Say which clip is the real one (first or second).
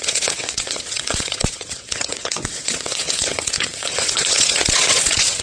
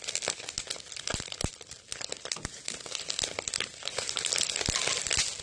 second